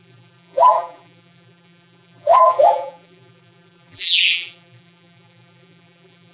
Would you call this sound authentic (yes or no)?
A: no